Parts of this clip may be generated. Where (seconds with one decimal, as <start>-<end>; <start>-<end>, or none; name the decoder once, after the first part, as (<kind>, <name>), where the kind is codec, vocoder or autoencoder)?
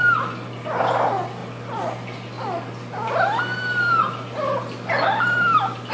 none